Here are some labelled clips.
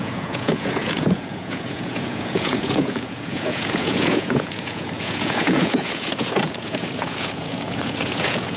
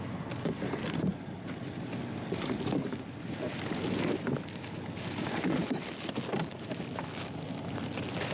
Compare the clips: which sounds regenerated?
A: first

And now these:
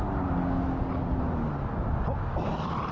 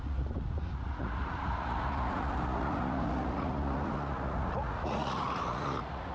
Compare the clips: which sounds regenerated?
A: second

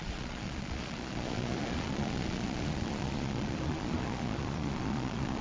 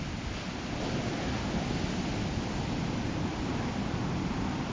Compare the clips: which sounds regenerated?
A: first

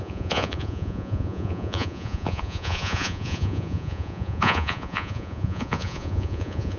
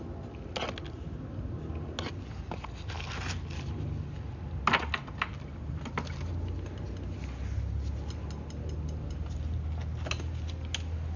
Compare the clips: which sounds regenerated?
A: first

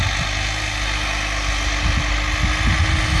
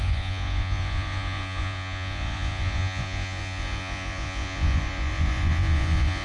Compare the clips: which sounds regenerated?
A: second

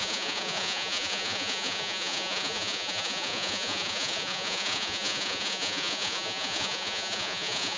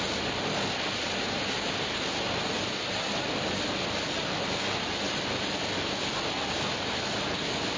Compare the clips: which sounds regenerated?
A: first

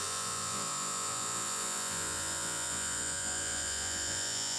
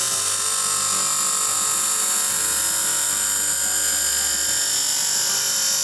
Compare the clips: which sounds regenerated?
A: first